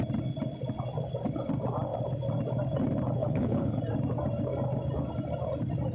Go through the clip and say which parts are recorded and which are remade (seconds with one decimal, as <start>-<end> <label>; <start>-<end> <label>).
0.0-3.2 recorded; 3.2-3.8 remade; 3.8-5.9 recorded